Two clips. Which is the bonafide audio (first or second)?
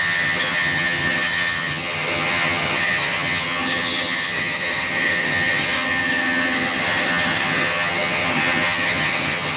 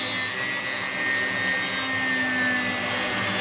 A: second